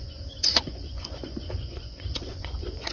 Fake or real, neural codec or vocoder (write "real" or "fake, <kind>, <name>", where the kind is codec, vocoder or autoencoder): fake, vocoder, Vocos